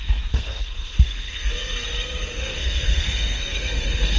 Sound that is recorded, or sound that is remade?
remade